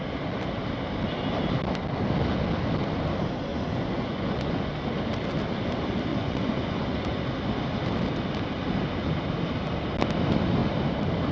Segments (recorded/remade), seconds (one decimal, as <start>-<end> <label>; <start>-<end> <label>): 0.0-3.5 recorded; 3.5-4.7 remade; 4.7-6.1 recorded; 6.1-7.2 remade; 7.2-11.3 recorded